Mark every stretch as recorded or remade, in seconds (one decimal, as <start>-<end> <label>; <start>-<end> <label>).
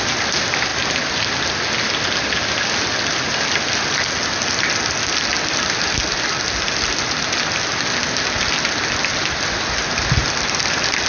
0.0-11.1 recorded